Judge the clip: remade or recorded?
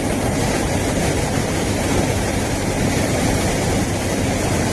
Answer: remade